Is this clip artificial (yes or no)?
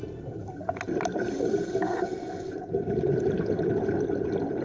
no